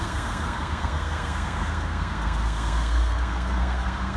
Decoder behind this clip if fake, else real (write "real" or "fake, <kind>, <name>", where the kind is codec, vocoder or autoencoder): fake, codec, SNAC